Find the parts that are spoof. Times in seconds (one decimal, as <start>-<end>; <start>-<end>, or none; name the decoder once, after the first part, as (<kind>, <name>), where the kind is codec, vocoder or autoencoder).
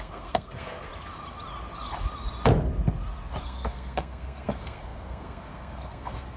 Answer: 0.0-0.9 (codec, SNAC); 3.4-6.4